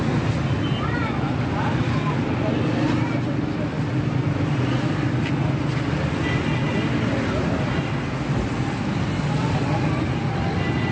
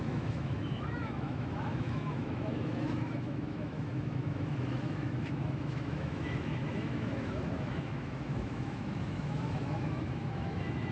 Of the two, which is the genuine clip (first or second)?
first